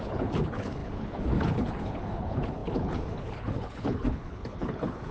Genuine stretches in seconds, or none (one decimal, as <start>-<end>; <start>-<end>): none